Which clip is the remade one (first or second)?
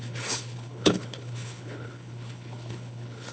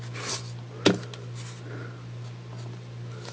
first